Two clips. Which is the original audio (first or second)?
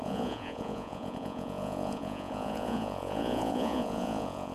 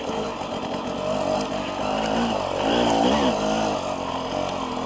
second